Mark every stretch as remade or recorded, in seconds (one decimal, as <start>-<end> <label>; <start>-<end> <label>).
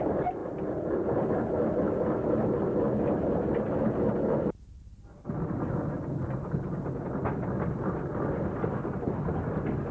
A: 0.0-9.9 recorded